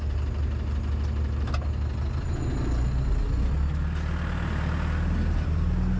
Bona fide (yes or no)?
yes